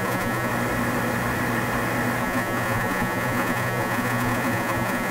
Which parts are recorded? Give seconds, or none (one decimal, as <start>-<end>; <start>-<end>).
0.5-2.2

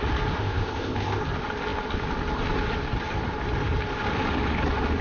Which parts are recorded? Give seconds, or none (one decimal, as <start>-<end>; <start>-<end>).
0.0-0.4; 1.2-5.0

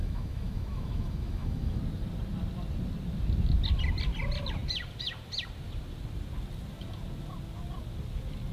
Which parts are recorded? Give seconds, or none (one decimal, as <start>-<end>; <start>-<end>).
1.8-8.5

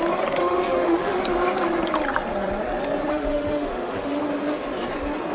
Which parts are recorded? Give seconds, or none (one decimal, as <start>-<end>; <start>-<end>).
0.0-0.4; 1.2-3.1; 4.2-5.3

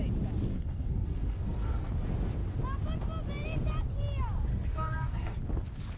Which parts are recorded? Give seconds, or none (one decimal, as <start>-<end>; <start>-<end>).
0.0-0.5; 1.9-4.5; 5.4-6.0

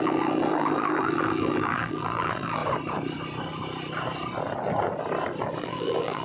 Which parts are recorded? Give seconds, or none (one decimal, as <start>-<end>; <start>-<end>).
2.6-5.6